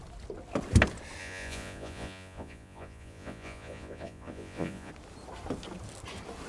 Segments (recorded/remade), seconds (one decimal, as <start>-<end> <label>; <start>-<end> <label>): 0.0-1.2 recorded; 1.2-4.9 remade; 4.9-6.5 recorded